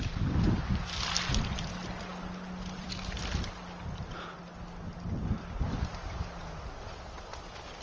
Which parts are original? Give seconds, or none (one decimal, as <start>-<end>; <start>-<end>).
0.0-7.8